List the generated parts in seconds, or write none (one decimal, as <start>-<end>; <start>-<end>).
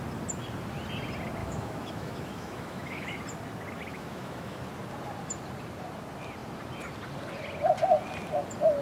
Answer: 1.4-3.2; 3.9-4.6